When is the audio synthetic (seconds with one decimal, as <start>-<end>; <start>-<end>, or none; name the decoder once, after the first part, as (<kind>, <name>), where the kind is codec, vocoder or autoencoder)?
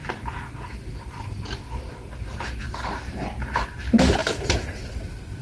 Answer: none